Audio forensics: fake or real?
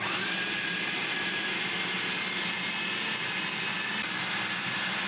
real